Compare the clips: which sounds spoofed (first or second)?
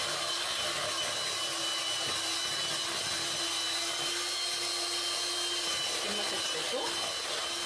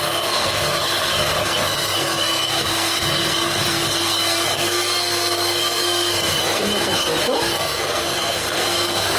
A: second